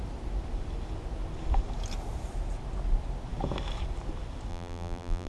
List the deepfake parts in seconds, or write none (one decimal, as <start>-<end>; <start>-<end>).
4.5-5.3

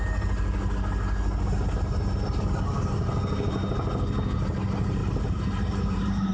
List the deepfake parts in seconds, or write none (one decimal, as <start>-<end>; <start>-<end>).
5.0-6.3

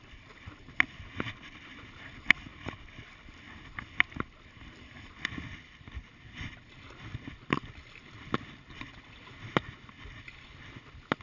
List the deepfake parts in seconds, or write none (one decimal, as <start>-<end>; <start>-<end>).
8.0-8.8

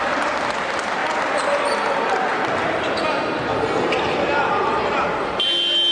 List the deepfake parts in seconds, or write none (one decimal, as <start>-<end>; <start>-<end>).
none

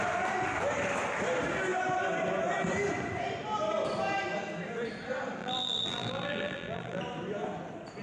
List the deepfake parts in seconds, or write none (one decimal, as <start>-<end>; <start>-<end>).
5.4-7.0